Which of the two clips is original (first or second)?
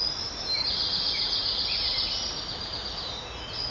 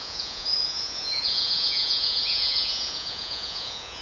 first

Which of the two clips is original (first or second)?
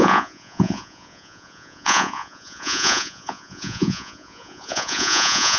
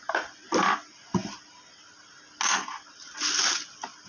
second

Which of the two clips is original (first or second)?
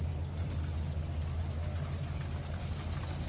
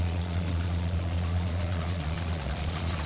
first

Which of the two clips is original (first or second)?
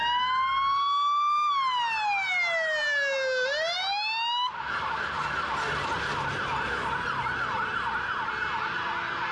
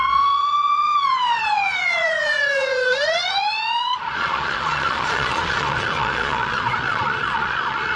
first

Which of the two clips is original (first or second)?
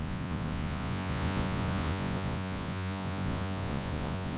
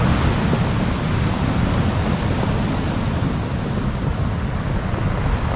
second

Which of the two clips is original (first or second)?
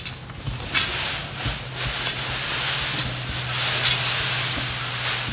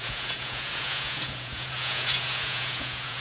first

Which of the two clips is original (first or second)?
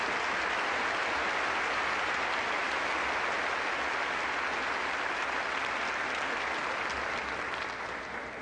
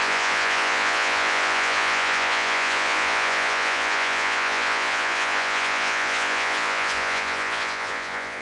first